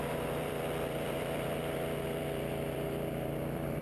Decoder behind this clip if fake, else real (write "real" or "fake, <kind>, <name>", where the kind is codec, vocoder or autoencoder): fake, vocoder, BigVGAN v2